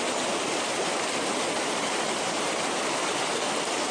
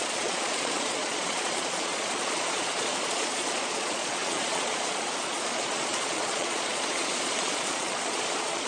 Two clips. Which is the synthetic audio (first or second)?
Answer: second